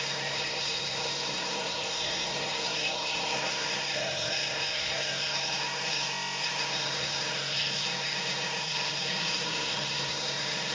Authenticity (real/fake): fake